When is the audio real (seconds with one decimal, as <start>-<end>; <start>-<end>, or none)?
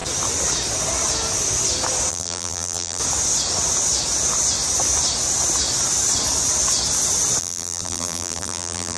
0.0-2.1; 3.0-7.4